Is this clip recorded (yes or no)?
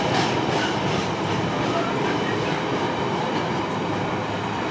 no